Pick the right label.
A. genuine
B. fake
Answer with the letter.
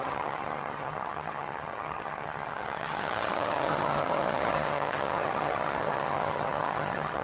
B